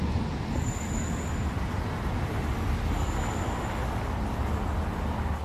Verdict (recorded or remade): recorded